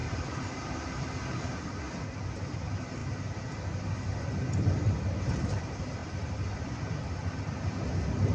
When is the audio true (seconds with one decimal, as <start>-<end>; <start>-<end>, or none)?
1.6-8.3

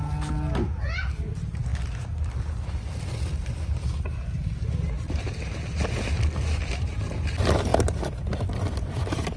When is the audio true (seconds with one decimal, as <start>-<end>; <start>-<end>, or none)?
0.0-9.4

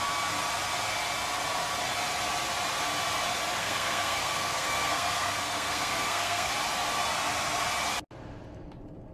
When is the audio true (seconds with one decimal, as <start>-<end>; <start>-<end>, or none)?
0.0-3.6; 6.5-9.1

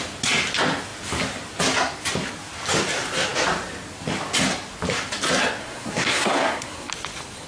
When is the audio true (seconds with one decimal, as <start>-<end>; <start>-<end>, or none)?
0.0-5.6; 6.9-7.5

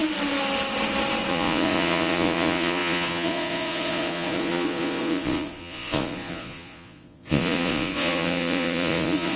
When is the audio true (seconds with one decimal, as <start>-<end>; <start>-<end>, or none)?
0.0-1.3

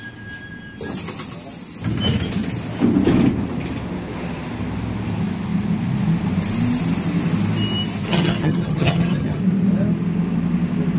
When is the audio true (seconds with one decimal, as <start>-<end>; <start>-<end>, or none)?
0.0-8.1; 9.4-11.0

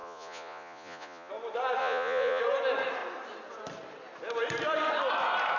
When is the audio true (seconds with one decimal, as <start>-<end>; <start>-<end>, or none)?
1.3-1.8; 2.4-5.6